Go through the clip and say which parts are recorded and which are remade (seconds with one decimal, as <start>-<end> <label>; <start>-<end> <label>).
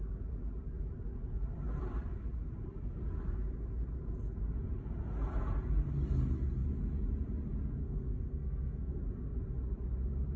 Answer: 0.0-7.8 recorded; 7.8-9.0 remade; 9.0-10.4 recorded